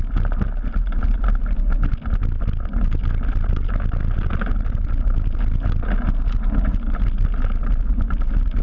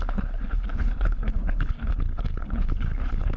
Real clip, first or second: first